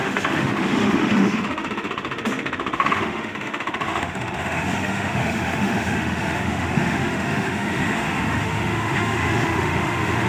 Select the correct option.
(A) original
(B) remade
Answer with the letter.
B